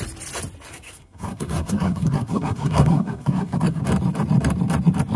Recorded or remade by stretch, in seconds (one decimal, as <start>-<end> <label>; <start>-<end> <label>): 0.0-0.7 recorded; 0.7-3.8 remade; 3.8-5.2 recorded